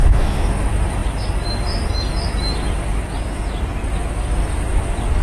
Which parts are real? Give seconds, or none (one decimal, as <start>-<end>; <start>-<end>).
0.5-5.2